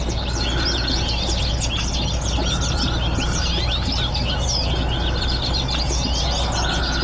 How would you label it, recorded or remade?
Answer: recorded